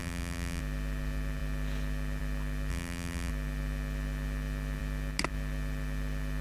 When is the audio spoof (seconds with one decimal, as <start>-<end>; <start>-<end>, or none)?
0.0-0.6; 2.7-3.3